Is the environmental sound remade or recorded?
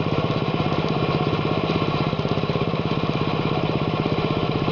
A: recorded